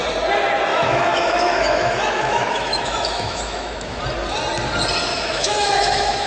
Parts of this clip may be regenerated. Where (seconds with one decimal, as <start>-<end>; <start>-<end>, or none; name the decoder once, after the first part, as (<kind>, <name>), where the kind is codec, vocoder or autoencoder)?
0.7-4.0 (autoencoder, DAC-VAE); 5.1-6.3